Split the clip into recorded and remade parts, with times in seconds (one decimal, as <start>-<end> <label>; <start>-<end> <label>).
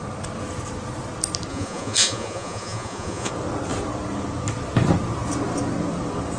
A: 0.0-1.5 recorded; 1.5-3.3 remade; 3.3-6.4 recorded